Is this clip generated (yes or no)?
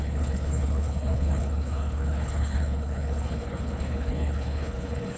yes